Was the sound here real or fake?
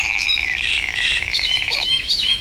fake